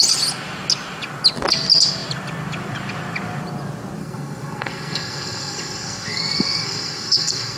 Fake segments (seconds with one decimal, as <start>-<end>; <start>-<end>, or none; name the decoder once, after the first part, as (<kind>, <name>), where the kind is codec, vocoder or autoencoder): 4.0-7.6 (codec, SNAC)